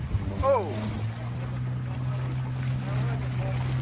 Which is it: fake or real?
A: real